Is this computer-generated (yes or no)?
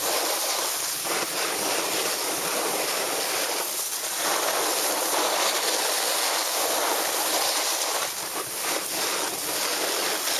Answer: no